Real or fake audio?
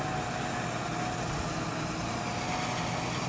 real